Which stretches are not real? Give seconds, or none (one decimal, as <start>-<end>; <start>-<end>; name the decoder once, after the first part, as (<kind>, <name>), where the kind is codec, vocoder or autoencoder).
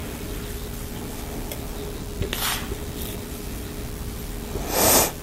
none